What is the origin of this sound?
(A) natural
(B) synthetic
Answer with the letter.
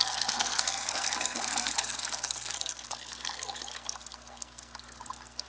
B